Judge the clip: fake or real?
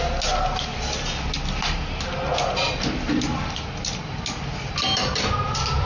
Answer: real